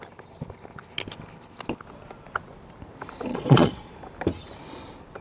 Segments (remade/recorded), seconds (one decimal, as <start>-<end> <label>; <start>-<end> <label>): 0.0-3.3 recorded; 3.3-3.9 remade; 3.9-5.2 recorded